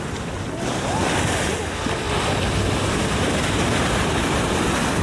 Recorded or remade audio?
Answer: recorded